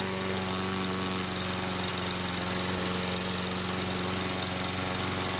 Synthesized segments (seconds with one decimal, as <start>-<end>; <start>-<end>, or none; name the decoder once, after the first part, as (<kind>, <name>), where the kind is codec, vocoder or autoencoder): none